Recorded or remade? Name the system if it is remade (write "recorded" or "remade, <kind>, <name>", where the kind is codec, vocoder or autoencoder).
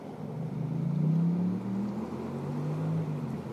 recorded